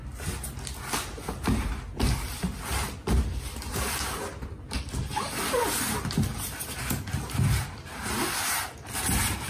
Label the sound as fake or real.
real